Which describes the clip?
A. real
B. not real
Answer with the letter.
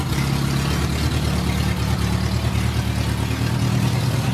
A